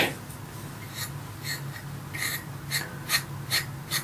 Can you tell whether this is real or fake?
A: real